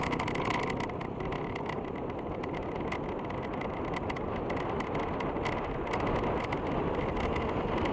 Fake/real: real